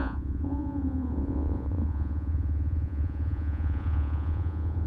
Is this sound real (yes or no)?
no